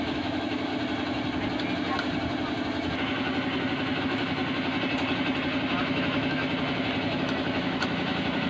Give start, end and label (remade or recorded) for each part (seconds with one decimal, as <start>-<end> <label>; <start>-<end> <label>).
0.0-0.7 remade; 0.7-4.0 recorded; 4.0-4.4 remade; 4.4-5.8 recorded; 5.8-6.4 remade; 6.4-7.2 recorded; 7.2-8.5 remade